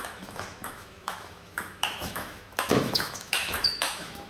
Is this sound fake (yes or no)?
yes